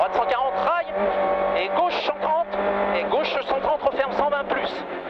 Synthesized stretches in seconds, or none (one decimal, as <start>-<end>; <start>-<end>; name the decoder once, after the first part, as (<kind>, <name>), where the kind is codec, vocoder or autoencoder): none